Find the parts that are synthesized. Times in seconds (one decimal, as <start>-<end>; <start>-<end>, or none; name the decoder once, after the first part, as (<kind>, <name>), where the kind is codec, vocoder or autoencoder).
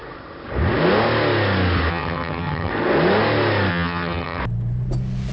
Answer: 1.9-2.7 (vocoder, HiFi-GAN); 3.7-4.4